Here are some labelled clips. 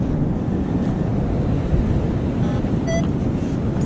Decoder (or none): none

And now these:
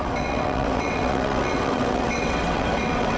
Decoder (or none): vocoder, WaveNeXt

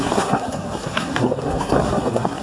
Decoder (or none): codec, SNAC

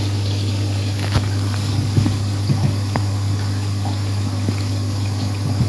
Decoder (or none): codec, DAC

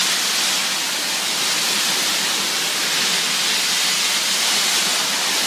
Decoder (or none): none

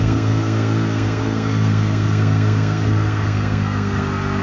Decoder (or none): codec, SNAC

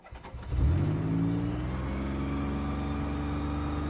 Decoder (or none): none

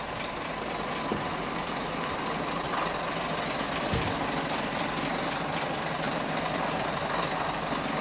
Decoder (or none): none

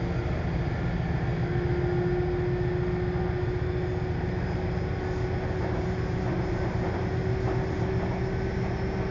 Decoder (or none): none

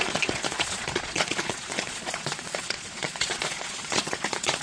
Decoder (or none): vocoder, Vocos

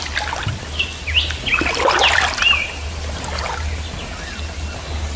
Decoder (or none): none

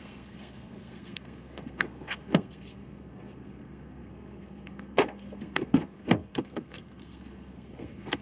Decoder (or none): codec, SNAC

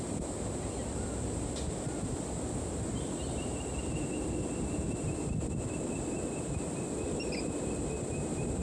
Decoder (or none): none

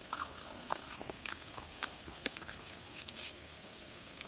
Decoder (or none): codec, SNAC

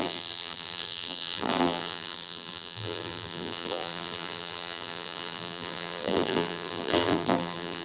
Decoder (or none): vocoder, BigVGAN v2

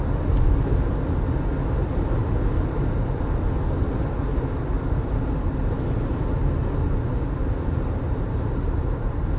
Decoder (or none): none